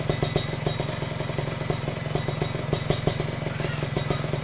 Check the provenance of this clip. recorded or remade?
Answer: recorded